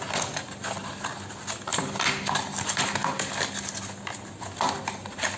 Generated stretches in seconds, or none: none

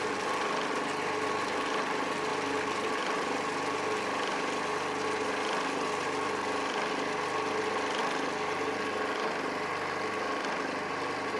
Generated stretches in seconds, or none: none